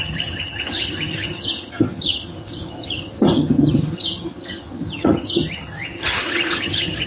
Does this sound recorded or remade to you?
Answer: remade